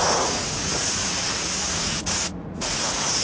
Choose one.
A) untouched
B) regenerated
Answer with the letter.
B